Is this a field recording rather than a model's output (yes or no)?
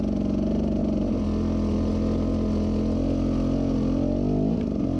yes